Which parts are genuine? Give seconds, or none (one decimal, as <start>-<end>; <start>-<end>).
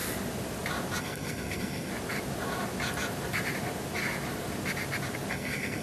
0.0-1.0; 1.9-5.3